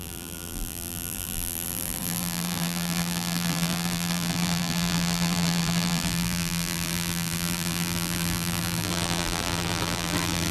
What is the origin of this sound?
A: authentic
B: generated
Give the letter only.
B